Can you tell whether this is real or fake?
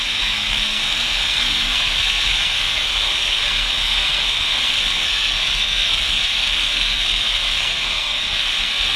fake